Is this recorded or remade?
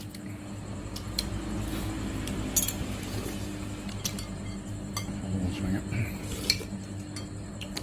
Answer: recorded